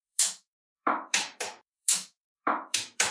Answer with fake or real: fake